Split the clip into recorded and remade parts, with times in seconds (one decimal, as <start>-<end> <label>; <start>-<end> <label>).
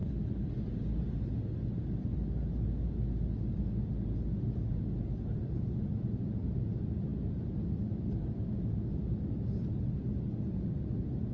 0.0-11.3 recorded